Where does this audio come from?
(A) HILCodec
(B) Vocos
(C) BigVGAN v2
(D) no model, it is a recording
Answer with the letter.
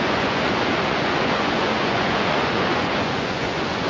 B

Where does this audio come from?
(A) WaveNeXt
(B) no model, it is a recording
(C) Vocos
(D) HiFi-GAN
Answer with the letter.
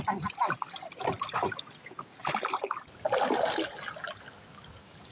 B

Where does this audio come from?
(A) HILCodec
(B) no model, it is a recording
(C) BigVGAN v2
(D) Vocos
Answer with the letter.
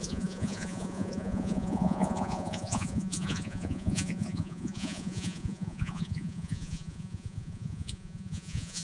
D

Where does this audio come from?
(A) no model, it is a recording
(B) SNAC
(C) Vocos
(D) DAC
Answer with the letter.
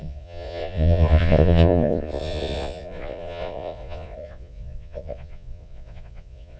C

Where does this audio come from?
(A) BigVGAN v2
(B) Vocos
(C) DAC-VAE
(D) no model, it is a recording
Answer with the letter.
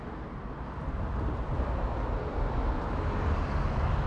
D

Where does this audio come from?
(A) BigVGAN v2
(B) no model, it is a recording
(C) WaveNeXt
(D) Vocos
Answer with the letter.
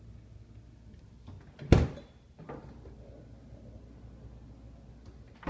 B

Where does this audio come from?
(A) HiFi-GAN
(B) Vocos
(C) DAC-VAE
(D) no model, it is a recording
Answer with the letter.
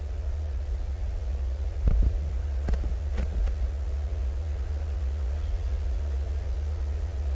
B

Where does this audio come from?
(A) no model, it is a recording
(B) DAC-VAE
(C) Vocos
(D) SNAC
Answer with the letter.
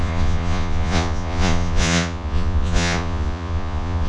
C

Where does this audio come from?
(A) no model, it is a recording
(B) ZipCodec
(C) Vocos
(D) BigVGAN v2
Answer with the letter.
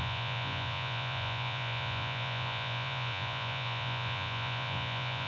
C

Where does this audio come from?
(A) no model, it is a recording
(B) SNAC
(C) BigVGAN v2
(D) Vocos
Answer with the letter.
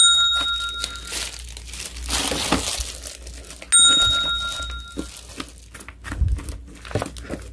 A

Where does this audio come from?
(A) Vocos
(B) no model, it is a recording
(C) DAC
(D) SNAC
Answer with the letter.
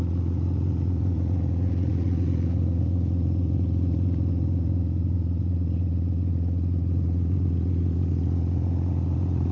A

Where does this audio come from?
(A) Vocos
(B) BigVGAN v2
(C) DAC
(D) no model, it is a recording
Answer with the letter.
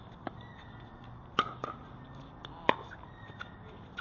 D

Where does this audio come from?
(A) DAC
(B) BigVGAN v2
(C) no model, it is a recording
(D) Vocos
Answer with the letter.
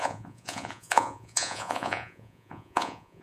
D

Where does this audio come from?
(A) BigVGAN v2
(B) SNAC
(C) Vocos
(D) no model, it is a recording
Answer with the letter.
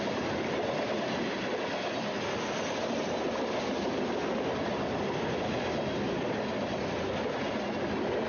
D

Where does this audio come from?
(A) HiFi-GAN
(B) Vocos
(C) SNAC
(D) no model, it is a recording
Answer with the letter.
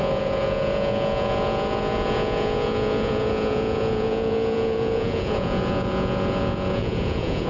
B